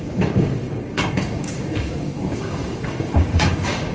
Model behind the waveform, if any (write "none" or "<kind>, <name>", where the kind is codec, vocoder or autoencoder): codec, DAC